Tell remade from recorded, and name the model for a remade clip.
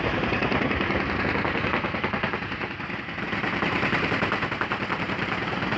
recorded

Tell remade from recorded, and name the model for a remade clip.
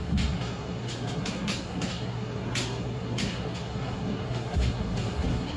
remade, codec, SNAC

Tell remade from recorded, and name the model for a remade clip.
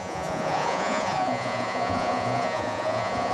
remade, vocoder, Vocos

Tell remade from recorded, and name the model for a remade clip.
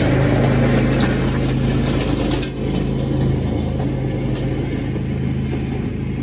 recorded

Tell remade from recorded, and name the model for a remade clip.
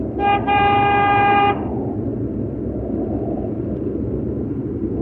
remade, vocoder, BigVGAN v2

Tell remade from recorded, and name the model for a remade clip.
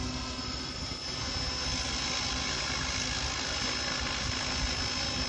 recorded